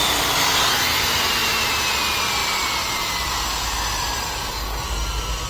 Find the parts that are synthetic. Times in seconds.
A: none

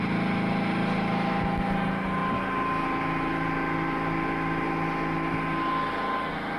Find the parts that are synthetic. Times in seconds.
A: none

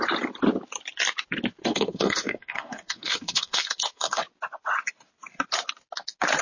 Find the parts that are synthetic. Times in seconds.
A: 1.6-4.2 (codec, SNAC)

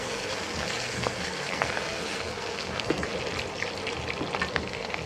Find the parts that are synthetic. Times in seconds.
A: 0.0-3.1 (codec, SNAC); 4.5-5.1

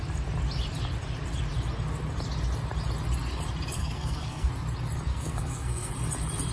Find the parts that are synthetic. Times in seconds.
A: 3.8-4.5 (codec, SNAC); 5.1-5.9

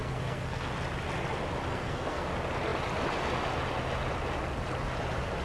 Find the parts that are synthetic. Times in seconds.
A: 0.0-0.7 (codec, SNAC); 1.7-2.3